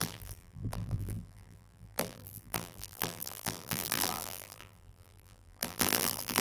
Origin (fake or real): fake